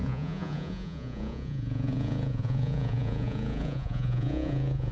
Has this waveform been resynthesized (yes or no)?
yes